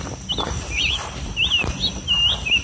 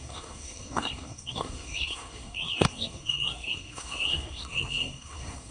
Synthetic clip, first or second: second